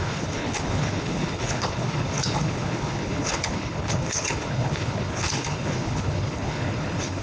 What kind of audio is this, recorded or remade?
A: remade